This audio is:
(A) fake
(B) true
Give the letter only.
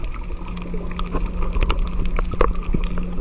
B